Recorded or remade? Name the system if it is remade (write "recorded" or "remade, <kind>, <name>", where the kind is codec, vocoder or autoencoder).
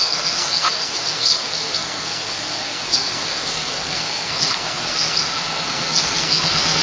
remade, codec, SNAC